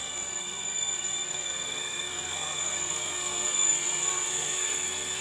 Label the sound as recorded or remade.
remade